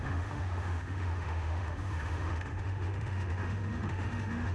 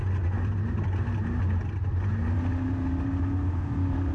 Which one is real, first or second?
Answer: second